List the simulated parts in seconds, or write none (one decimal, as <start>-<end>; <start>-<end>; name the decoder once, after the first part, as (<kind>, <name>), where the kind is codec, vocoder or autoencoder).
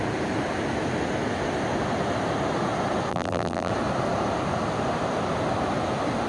3.1-3.7 (vocoder, BigVGAN v2)